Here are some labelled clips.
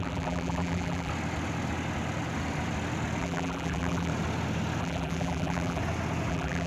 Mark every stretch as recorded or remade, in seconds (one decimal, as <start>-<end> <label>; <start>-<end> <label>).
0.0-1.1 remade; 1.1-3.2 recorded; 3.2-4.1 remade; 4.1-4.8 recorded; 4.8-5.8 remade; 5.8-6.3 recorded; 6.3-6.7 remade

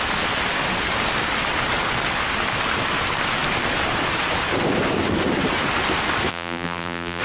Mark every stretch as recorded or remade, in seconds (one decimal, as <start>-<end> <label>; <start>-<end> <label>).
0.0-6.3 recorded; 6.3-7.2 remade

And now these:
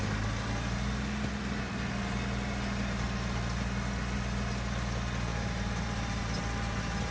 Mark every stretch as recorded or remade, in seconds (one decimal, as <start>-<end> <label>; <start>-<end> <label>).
0.0-5.3 recorded; 5.3-6.2 remade; 6.2-7.1 recorded